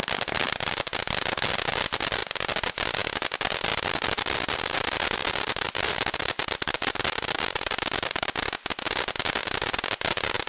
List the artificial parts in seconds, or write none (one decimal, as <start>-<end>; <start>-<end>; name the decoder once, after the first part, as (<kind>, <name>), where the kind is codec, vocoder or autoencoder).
3.7-8.3 (vocoder, BigVGAN v2)

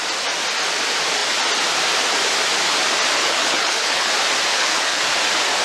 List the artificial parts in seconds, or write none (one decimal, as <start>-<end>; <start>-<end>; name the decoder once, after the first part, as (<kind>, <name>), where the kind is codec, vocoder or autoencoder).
3.2-4.1 (codec, HILCodec); 4.5-5.0

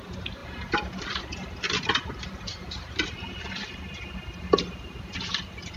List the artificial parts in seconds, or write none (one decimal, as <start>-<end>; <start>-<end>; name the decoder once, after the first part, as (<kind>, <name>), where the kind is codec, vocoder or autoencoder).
0.4-1.2 (vocoder, BigVGAN v2); 2.5-4.0

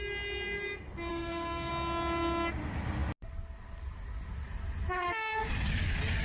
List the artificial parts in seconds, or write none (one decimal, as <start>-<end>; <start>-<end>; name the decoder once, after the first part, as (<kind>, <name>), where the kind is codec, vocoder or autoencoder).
1.1-1.7 (codec, SNAC)

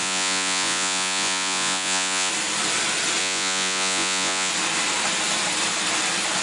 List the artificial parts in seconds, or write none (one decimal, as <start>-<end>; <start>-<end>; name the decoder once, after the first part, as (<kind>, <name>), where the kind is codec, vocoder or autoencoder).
0.0-2.3 (vocoder, Vocos); 3.2-4.5

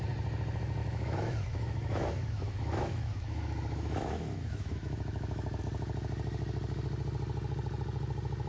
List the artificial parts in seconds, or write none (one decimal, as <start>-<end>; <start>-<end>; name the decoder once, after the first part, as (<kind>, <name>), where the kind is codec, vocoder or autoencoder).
0.8-5.6 (autoencoder, DAC-VAE)

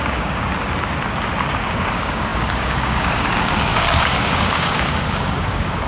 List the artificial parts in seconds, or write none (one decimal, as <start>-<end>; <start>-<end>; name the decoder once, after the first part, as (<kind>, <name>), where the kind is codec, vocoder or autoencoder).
0.0-0.5 (codec, DAC); 1.5-5.9

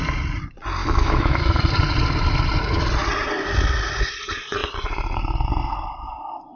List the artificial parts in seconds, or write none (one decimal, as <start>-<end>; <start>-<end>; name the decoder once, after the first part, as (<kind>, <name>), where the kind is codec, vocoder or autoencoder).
0.8-1.6 (autoencoder, DAC-VAE)